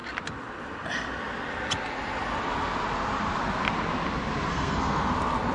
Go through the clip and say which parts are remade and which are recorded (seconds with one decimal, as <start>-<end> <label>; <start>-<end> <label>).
0.0-4.5 recorded; 4.5-5.1 remade; 5.1-5.5 recorded